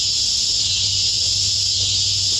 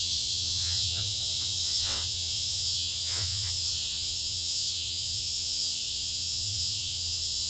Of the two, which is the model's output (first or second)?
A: second